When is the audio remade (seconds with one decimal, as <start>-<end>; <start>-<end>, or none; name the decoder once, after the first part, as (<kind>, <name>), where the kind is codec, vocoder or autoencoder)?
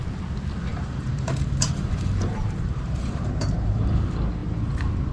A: 0.7-3.8 (vocoder, BigVGAN v2)